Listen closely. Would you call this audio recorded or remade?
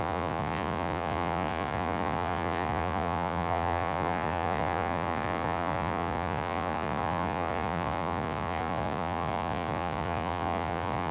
remade